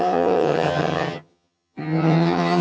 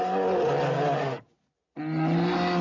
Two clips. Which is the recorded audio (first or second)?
second